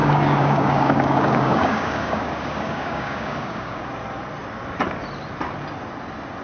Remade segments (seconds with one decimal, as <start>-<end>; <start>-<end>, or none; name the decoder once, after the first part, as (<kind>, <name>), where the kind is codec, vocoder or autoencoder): 0.0-3.8 (codec, DAC)